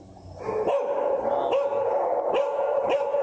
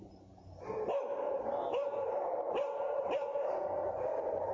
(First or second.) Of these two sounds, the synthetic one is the second